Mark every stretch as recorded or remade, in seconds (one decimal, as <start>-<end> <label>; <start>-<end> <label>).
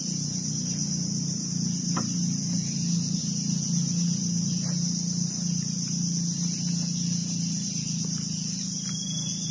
0.0-9.5 recorded